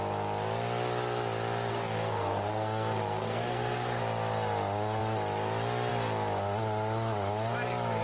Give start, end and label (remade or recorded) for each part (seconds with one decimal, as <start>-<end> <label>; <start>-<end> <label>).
0.0-1.7 recorded; 1.7-4.0 remade; 4.0-8.0 recorded